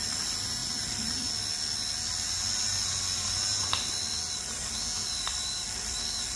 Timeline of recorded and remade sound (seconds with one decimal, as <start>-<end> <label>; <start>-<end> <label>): 0.0-6.4 recorded